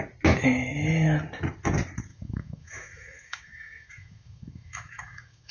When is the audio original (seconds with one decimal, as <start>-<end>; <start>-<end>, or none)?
0.0-2.1